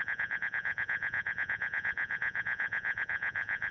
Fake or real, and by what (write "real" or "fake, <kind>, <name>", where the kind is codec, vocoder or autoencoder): fake, vocoder, Vocos